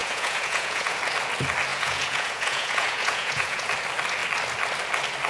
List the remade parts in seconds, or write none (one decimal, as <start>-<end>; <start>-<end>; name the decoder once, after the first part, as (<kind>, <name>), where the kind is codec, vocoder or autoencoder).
0.0-1.0 (vocoder, Vocos); 1.7-3.7